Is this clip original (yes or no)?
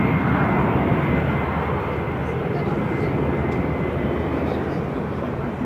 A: yes